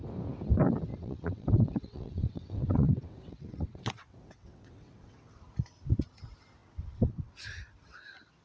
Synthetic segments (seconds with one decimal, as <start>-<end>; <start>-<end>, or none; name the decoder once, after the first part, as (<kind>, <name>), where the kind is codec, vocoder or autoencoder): 0.9-5.4 (vocoder, WaveNeXt); 6.6-7.3